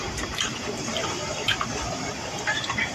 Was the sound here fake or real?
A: fake